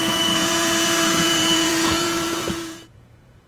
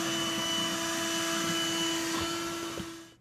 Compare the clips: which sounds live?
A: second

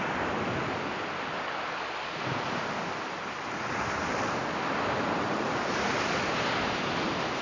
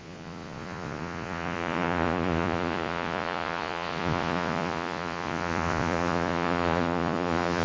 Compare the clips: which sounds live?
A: first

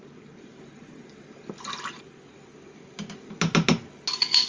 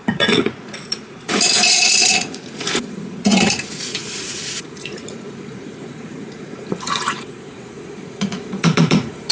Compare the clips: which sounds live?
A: first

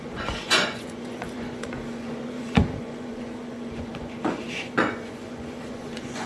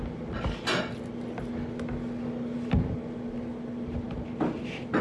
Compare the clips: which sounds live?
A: second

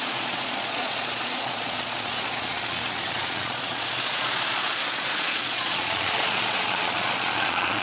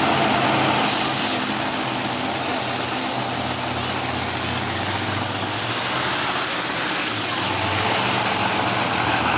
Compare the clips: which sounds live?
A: second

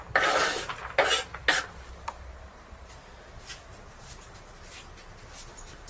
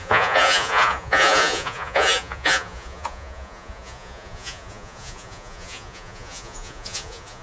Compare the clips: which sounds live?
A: first